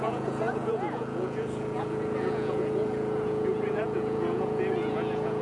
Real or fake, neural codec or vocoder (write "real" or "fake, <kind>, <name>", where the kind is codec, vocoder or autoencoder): fake, vocoder, Vocos